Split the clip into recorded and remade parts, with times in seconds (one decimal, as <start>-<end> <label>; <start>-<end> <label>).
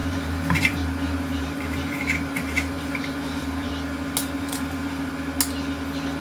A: 0.0-3.7 remade; 3.7-4.2 recorded; 4.2-5.1 remade; 5.1-6.2 recorded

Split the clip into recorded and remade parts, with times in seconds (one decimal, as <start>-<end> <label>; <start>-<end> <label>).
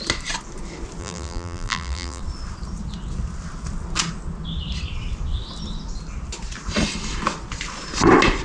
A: 0.0-1.0 recorded; 1.0-2.2 remade; 2.2-8.4 recorded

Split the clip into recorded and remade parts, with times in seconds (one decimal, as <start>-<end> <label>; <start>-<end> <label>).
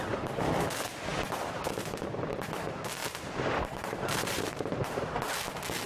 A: 0.0-3.0 recorded; 3.0-5.1 remade; 5.1-5.9 recorded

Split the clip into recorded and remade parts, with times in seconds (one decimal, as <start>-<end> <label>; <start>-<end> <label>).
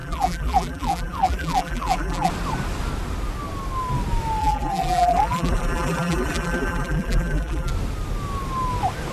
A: 0.0-2.3 remade; 2.3-4.4 recorded; 4.4-7.7 remade; 7.7-9.1 recorded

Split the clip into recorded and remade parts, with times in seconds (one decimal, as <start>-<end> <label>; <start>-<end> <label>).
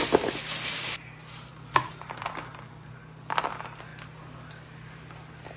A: 0.0-1.5 recorded; 1.5-3.0 remade; 3.0-5.6 recorded